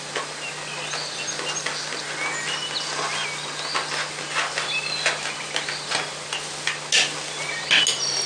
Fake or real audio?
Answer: real